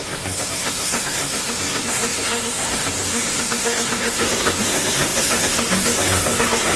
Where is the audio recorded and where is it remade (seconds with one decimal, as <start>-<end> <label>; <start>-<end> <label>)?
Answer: 0.0-6.8 remade